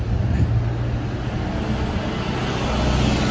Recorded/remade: recorded